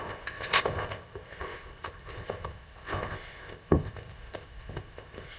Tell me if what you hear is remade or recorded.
remade